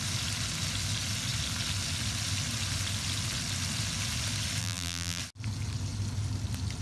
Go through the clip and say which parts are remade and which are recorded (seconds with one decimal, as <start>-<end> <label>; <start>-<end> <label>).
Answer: 0.0-4.6 recorded; 4.6-5.2 remade; 5.2-6.8 recorded